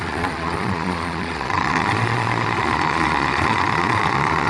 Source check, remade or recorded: remade